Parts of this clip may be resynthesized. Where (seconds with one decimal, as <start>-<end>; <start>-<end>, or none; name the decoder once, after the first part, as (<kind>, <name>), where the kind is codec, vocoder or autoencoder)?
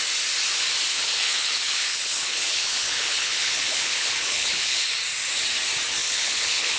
0.9-4.9 (codec, HILCodec); 6.0-6.8